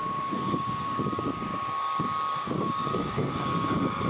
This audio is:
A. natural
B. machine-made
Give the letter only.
B